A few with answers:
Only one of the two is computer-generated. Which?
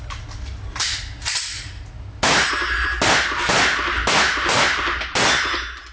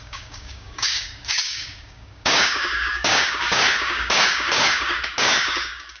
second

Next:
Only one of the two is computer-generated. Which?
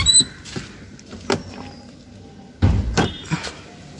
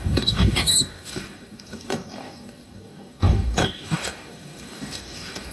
second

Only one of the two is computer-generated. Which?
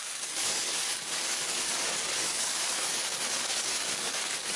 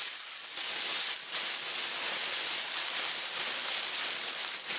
first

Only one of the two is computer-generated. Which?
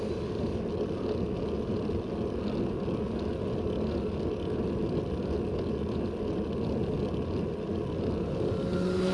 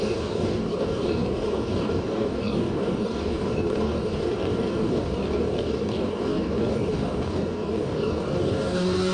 second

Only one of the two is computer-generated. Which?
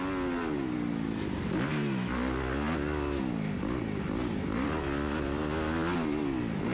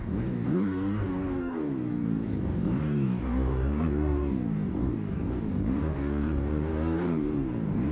second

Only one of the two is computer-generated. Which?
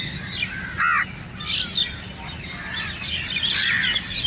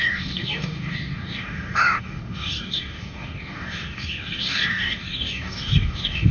second